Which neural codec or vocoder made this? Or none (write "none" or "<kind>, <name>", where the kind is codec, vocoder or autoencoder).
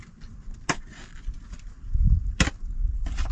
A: none